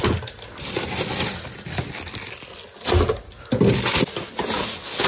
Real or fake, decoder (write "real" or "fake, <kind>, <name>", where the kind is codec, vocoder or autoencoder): real